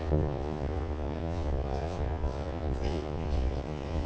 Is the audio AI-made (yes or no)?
yes